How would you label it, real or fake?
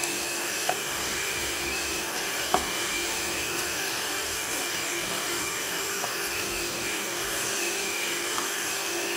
fake